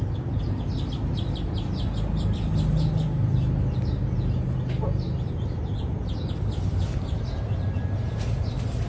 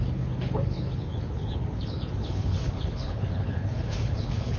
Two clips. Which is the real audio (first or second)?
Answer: first